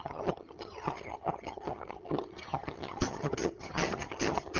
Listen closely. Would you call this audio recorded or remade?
remade